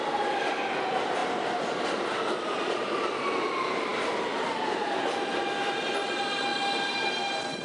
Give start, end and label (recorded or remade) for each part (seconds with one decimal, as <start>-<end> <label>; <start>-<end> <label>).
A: 0.0-7.6 recorded